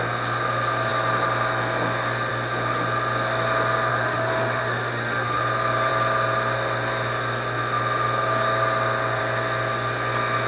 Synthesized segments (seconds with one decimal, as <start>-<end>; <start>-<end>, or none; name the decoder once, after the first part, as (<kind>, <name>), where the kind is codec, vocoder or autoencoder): 3.9-5.4 (autoencoder, DAC-VAE)